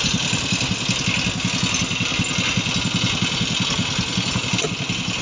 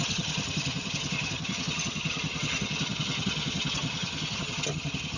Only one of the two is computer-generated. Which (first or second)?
second